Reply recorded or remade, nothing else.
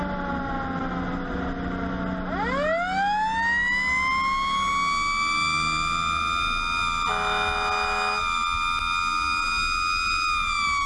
recorded